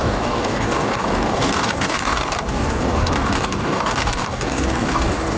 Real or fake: fake